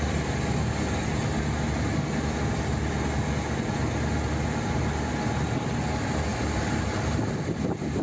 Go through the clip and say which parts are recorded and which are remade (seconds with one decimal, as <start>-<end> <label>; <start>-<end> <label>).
0.0-6.3 recorded; 6.3-8.0 remade